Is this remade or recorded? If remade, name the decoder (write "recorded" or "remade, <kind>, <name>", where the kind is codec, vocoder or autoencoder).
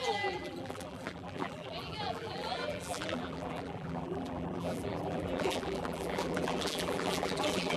remade, vocoder, BigVGAN v2